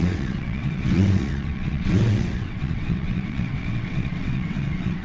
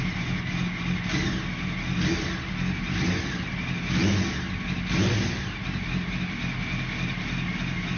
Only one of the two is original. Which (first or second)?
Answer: second